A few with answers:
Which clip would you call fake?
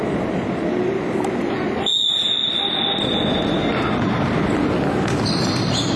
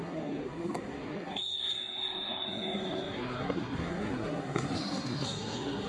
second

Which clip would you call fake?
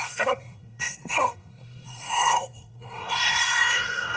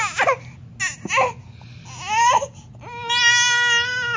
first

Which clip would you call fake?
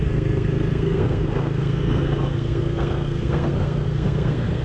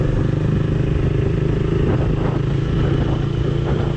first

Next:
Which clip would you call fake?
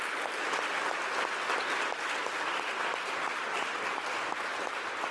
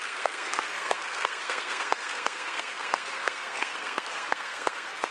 second